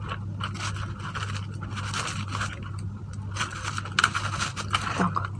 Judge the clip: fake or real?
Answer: real